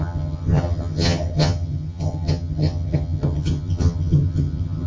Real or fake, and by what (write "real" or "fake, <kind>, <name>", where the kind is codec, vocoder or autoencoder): fake, vocoder, HiFi-GAN